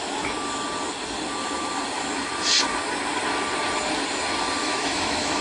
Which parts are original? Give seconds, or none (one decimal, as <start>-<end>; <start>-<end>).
0.0-4.6